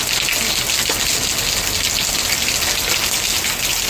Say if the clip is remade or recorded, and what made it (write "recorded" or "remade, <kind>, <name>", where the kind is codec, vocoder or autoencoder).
recorded